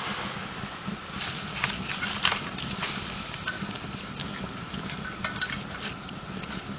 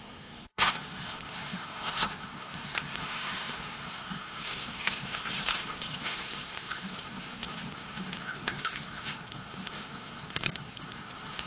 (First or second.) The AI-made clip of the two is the second